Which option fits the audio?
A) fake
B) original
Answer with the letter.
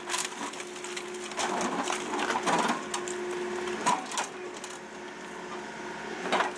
B